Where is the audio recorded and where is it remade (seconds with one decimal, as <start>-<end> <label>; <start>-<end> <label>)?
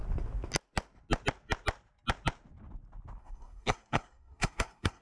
0.0-3.2 recorded; 3.2-5.0 remade